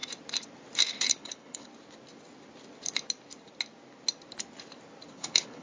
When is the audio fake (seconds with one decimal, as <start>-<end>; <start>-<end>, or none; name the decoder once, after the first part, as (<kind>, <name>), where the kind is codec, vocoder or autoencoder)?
0.9-1.7 (codec, HILCodec); 5.1-5.6